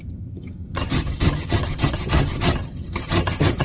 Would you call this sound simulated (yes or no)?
yes